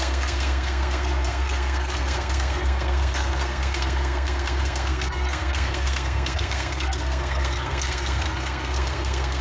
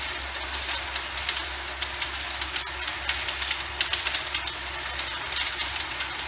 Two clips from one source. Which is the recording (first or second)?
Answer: second